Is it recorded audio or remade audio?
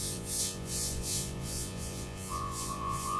remade